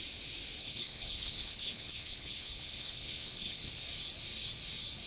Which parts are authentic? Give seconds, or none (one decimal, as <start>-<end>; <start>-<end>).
0.0-0.6; 3.7-5.1

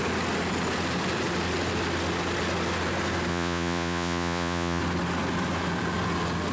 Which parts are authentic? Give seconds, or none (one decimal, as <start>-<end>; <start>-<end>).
0.0-3.3; 4.8-6.5

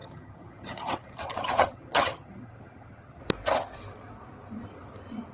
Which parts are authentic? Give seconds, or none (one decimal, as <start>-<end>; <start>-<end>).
3.2-5.3

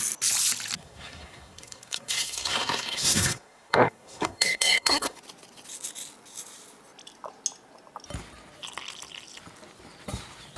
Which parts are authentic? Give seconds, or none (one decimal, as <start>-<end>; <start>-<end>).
0.0-0.8; 5.2-10.6

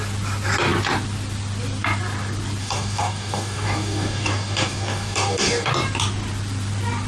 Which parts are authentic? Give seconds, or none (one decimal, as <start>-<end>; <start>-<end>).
0.0-2.6; 5.7-7.1